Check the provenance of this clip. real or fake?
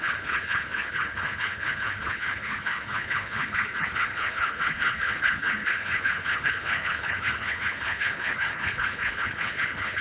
fake